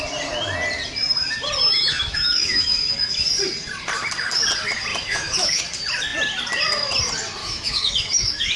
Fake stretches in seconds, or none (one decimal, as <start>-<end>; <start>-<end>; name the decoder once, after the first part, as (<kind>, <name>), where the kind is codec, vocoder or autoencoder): 1.7-3.1 (autoencoder, DAC-VAE); 4.9-5.6; 7.4-8.6